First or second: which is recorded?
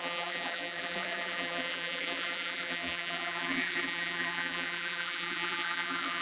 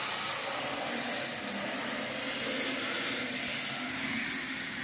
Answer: second